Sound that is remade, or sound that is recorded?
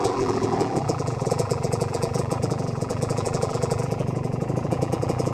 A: remade